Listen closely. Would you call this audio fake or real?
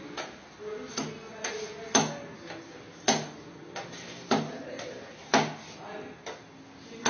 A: real